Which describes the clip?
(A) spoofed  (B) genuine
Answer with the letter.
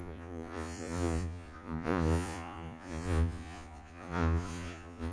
A